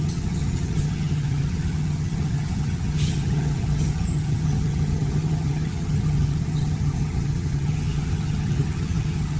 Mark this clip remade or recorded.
remade